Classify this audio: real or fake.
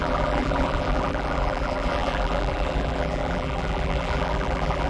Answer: fake